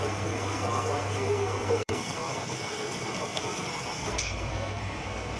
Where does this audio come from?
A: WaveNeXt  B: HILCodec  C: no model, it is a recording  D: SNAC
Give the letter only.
D